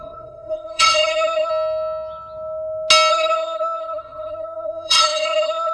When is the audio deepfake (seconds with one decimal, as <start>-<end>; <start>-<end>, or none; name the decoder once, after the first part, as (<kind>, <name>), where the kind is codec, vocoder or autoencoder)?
0.0-1.5 (codec, SNAC); 3.1-5.7